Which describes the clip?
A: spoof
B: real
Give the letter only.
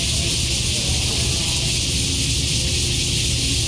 B